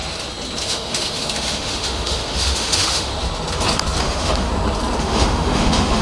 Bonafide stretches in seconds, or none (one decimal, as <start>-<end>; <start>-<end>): 0.0-0.6; 3.1-4.0; 4.5-5.0